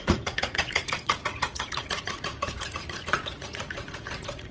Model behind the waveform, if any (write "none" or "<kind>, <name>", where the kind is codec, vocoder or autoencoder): vocoder, Vocos